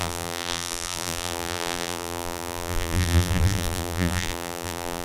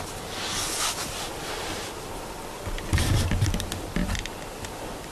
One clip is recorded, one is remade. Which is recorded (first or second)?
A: second